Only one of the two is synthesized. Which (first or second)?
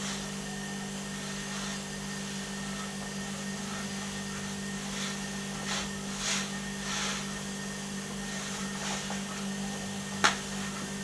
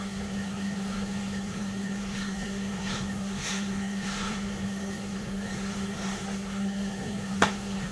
second